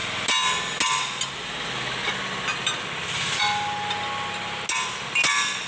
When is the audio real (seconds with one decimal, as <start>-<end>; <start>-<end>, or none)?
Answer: 0.0-5.7

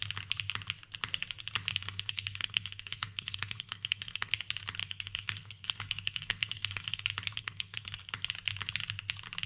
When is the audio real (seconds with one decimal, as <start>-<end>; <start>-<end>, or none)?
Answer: 0.0-1.7; 4.3-4.8; 7.0-7.4; 8.0-9.5

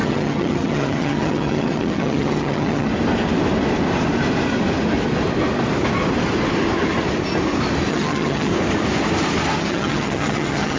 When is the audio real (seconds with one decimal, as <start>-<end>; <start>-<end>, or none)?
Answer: 2.9-7.9; 8.5-9.6

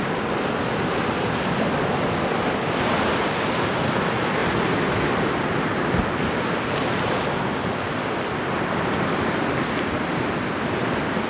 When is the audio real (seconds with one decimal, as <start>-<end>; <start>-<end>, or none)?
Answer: 0.0-11.3

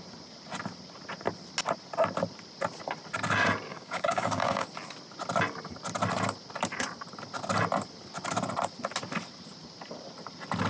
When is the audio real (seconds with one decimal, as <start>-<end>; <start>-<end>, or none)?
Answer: 0.0-3.7; 4.7-10.7

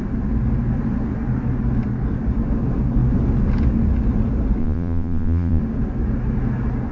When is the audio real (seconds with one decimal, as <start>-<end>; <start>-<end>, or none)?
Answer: 0.0-4.6; 5.6-6.9

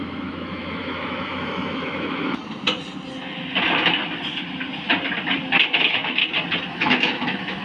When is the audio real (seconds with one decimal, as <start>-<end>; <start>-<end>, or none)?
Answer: 2.4-5.8; 6.2-6.7

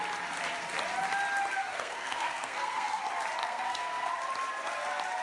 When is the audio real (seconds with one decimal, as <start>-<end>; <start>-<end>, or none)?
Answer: 0.0-1.6; 3.0-3.4; 4.1-5.2